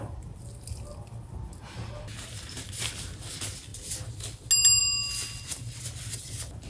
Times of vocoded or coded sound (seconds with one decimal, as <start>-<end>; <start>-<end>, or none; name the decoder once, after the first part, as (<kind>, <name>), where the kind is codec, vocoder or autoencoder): none